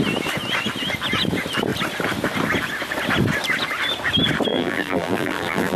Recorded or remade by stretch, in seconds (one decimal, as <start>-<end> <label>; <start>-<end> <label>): 0.0-4.5 recorded; 4.5-5.8 remade